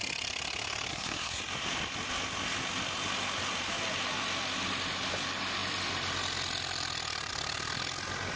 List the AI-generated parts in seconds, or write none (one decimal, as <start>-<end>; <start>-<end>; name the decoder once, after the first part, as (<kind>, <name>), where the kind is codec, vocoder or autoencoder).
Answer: 0.9-1.4 (codec, SNAC)